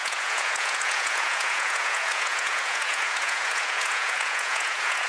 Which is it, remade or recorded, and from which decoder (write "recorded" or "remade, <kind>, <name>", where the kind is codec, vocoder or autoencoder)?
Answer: remade, vocoder, Vocos